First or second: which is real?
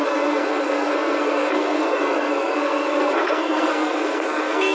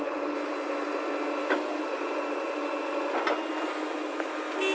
second